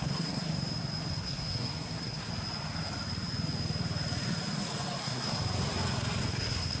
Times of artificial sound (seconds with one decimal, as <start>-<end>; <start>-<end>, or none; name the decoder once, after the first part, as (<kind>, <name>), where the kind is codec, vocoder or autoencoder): 0.0-0.5 (codec, SNAC); 1.1-2.3; 5.0-5.4; 6.3-6.8